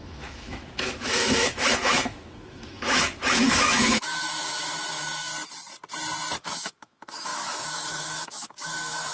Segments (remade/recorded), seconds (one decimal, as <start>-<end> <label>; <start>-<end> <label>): 0.0-5.3 remade; 5.3-6.4 recorded; 6.4-9.1 remade